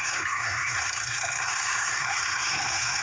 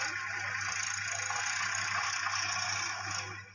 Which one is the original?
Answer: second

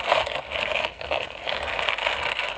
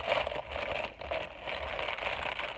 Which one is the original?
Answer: second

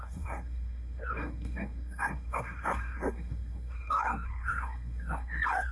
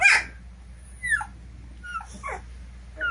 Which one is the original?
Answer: second